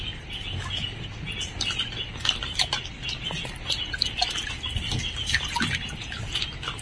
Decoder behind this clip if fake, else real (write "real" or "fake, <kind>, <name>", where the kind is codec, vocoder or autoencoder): real